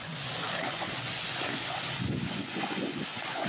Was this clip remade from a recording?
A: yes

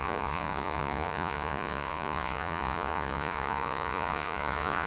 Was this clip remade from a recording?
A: yes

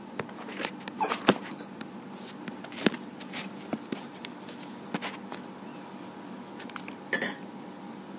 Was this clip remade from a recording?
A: no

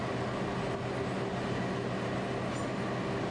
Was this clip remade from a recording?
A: no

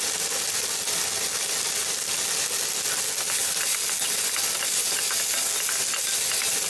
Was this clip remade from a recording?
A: no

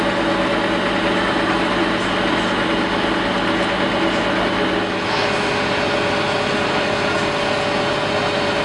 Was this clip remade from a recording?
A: no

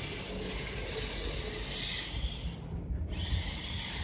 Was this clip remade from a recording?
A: no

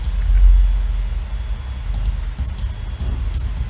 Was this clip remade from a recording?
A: no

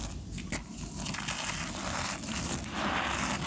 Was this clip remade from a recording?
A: no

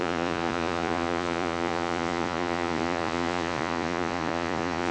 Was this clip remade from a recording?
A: yes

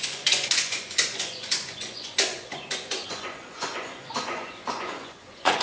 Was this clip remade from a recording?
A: yes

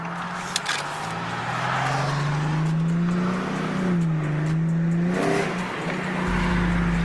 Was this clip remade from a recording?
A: no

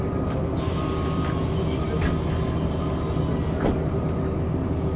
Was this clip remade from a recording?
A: no